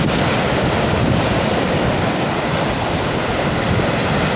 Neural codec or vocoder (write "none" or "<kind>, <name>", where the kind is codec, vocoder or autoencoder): vocoder, BigVGAN v2